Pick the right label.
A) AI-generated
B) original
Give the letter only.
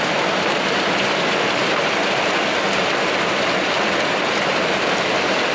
A